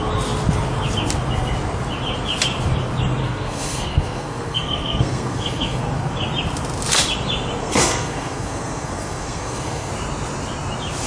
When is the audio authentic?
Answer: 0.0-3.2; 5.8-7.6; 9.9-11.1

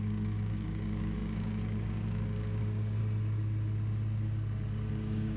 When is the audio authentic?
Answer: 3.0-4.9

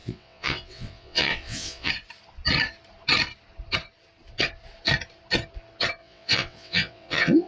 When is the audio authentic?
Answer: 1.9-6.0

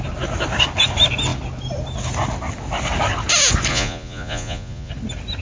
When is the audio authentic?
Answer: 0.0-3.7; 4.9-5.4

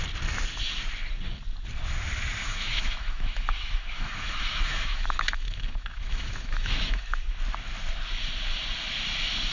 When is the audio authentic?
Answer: 0.0-2.4; 7.3-9.5

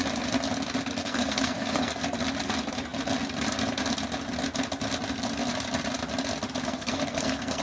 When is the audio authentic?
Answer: 0.0-1.0; 2.0-6.6

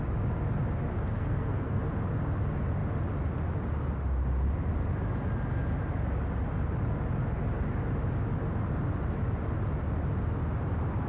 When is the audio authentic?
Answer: 0.0-0.9; 1.8-11.1

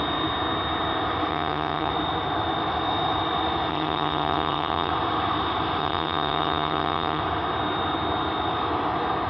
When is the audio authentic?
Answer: 0.0-1.3; 1.9-3.7; 4.9-5.8; 7.2-9.3